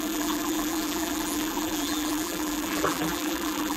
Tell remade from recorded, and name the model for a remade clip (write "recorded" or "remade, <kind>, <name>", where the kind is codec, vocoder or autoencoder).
remade, vocoder, BigVGAN v2